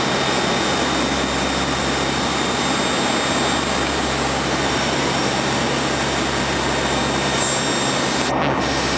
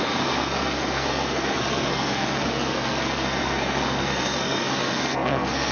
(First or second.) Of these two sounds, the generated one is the second